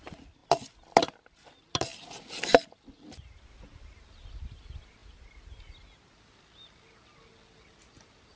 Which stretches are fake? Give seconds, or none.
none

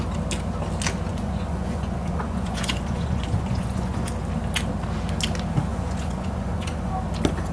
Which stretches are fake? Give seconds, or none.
1.1-4.1 (vocoder, Vocos); 5.7-6.9

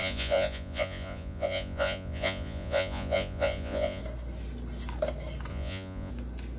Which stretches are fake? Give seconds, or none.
0.0-4.0 (vocoder, Vocos); 5.5-6.1

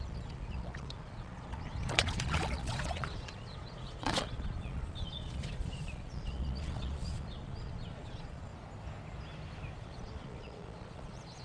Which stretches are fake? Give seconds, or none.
0.0-8.5 (vocoder, Vocos); 9.8-11.4